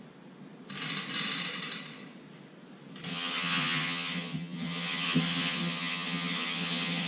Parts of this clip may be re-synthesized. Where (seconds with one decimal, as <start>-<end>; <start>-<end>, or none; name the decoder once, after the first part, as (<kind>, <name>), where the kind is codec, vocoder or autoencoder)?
3.1-7.1 (vocoder, HiFi-GAN)